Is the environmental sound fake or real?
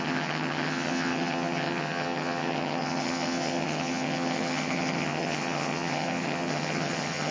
fake